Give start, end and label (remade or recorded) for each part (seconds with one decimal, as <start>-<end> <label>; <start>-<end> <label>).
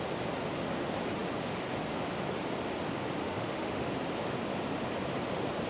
0.0-3.2 recorded; 3.2-3.9 remade; 3.9-5.7 recorded